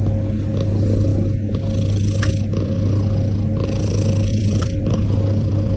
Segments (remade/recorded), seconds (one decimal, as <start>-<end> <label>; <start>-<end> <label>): 0.0-4.3 recorded; 4.3-5.8 remade